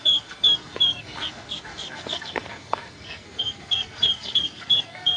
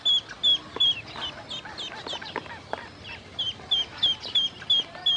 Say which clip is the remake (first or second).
first